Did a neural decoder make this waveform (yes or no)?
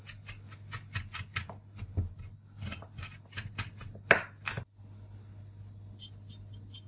no